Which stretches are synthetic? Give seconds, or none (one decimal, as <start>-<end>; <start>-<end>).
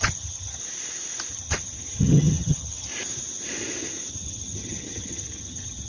0.0-0.6; 1.3-2.9; 4.1-5.9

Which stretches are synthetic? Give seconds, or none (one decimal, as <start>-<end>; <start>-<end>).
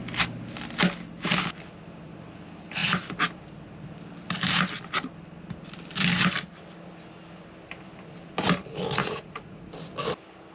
9.0-9.7